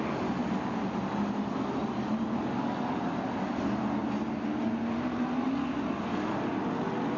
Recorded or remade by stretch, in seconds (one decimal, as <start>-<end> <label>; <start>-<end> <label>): 0.0-7.2 recorded